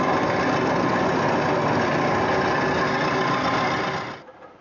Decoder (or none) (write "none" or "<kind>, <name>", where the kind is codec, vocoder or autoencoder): none